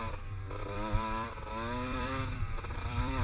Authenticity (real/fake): fake